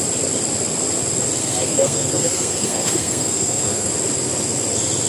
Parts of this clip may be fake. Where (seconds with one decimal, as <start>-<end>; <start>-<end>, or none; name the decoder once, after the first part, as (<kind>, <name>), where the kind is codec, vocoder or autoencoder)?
1.4-3.9 (codec, SNAC)

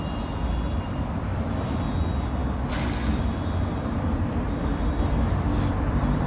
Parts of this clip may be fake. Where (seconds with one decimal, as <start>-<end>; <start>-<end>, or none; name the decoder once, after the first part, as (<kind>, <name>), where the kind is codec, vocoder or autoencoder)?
0.0-1.3 (vocoder, BigVGAN v2); 3.2-6.3

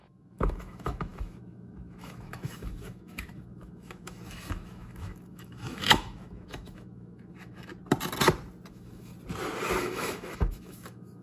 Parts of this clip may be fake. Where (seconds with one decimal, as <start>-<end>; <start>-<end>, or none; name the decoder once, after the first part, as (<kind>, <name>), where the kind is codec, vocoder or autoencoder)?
0.0-7.7 (autoencoder, DAC-VAE); 8.7-9.1; 9.8-11.2

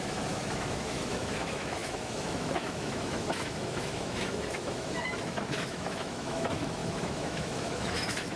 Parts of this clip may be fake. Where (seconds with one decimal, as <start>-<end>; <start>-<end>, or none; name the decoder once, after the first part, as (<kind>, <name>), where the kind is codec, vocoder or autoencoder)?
0.0-8.4 (autoencoder, DAC-VAE)

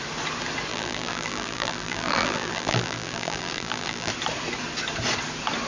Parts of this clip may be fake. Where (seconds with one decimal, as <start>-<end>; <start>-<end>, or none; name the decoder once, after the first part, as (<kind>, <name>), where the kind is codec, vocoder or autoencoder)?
0.7-4.1 (vocoder, BigVGAN v2)

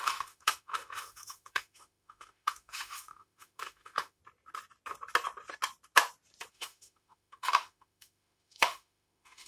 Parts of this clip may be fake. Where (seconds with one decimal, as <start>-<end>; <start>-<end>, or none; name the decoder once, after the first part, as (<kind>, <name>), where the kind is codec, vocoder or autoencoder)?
0.0-4.2 (autoencoder, DAC-VAE); 6.5-9.5